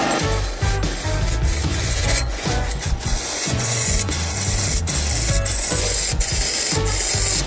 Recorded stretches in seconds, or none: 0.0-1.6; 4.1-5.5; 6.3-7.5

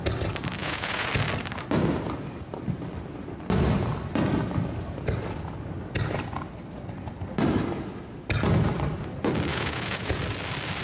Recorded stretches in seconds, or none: 0.0-0.6; 1.1-9.5; 10.2-10.8

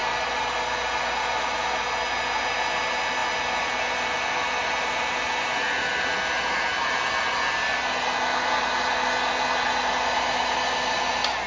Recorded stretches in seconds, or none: 0.0-11.5

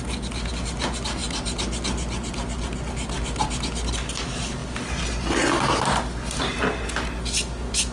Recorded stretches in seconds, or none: 0.0-7.9